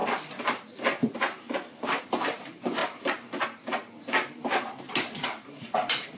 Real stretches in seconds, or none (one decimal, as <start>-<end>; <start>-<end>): 0.0-2.0; 2.8-4.9